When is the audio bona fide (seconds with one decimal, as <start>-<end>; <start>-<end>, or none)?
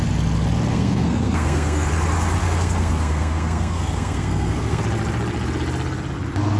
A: 0.0-0.7; 1.9-2.4; 4.8-6.6